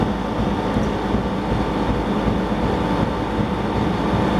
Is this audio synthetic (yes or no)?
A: no